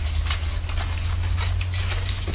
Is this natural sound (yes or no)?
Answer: yes